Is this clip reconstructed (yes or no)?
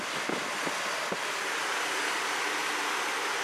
no